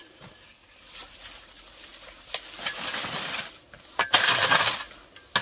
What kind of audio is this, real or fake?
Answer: real